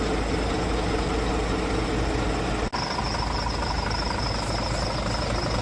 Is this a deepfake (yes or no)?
no